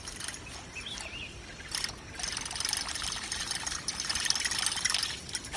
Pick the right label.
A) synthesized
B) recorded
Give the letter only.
B